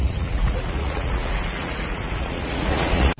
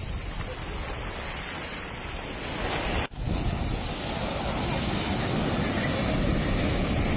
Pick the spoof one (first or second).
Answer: first